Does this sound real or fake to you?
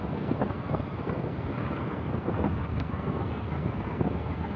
fake